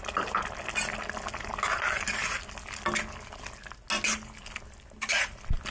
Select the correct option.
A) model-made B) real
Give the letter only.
B